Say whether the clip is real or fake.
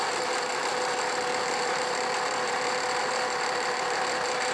real